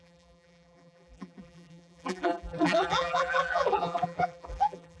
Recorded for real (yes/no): no